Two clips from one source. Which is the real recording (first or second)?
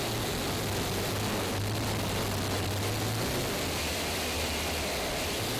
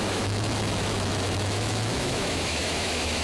first